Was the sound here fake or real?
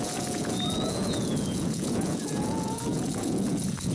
fake